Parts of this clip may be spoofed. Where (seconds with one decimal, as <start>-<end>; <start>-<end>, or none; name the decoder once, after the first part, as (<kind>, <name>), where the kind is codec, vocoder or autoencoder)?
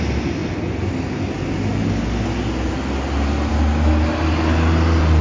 none